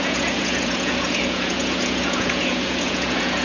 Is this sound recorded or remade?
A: remade